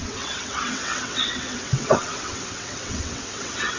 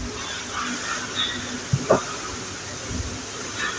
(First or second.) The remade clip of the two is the first